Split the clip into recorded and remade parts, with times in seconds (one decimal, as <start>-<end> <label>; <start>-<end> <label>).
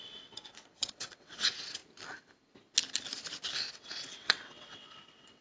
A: 0.0-1.8 remade; 1.8-3.7 recorded; 3.7-5.4 remade